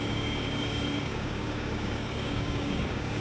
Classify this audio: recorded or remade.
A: remade